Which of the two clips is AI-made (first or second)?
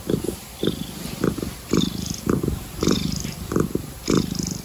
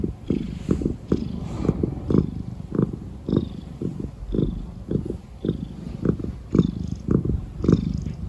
first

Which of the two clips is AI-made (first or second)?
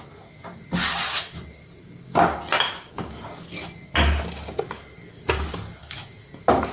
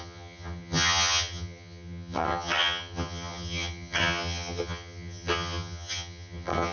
second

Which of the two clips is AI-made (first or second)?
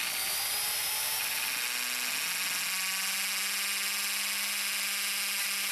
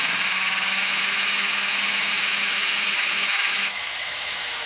second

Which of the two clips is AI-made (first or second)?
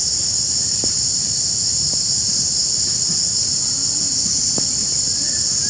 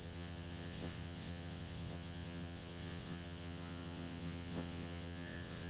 second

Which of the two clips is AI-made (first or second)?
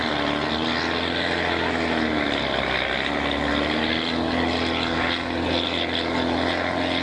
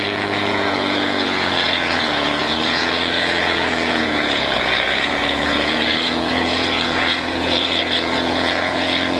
second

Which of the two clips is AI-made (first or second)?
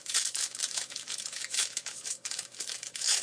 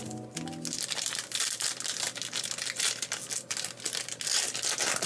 first